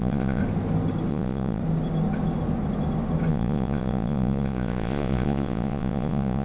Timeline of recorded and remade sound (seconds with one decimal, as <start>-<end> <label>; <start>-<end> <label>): 0.0-0.4 remade; 0.4-1.1 recorded; 1.1-1.6 remade; 1.6-3.3 recorded; 3.3-6.4 remade